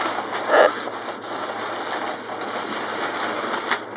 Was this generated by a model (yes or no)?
no